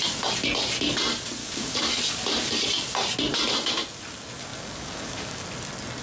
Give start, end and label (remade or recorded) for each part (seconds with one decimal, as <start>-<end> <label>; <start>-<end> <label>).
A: 0.0-1.4 recorded; 1.4-2.0 remade; 2.0-4.5 recorded; 4.5-5.4 remade; 5.4-6.0 recorded